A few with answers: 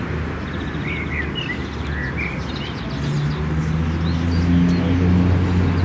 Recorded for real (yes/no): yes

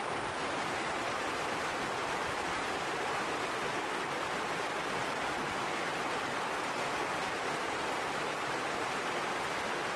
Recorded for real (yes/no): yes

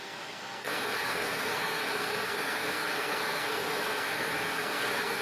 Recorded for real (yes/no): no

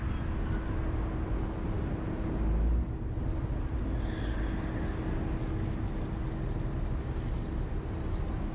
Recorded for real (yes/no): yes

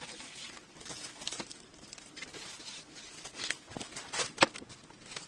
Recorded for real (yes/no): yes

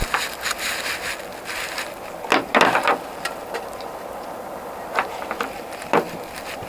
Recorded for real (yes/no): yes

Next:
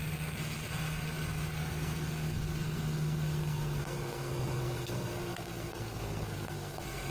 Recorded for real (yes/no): no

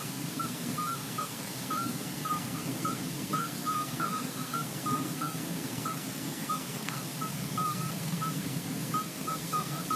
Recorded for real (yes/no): no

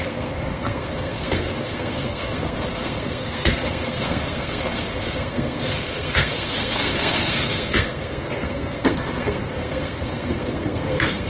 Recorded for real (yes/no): no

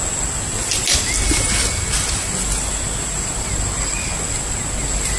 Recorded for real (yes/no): yes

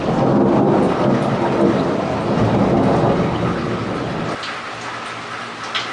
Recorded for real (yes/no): yes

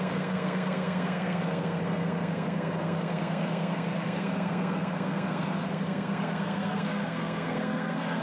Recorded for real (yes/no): no